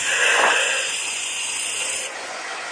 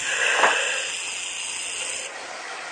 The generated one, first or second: first